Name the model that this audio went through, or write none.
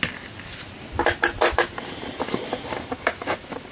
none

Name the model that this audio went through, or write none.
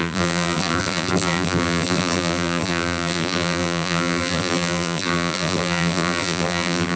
vocoder, BigVGAN v2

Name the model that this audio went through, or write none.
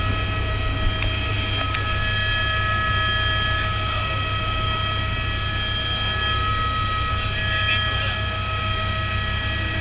none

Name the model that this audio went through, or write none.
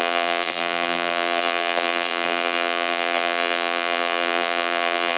vocoder, BigVGAN v2